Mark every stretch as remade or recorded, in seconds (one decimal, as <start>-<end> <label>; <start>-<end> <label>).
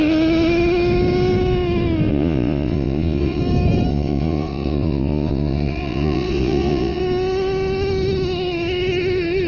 0.0-2.1 recorded; 2.1-3.4 remade; 3.4-3.9 recorded; 3.9-7.0 remade; 7.0-9.5 recorded